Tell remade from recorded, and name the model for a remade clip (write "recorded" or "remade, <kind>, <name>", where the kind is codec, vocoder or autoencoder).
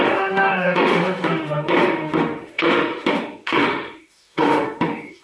remade, autoencoder, DAC-VAE